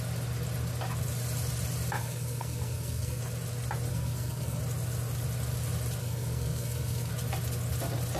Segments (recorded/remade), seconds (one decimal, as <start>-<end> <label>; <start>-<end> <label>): 0.0-2.0 recorded; 2.0-3.2 remade; 3.2-3.9 recorded; 3.9-4.6 remade; 4.6-6.0 recorded; 6.0-7.1 remade; 7.1-8.2 recorded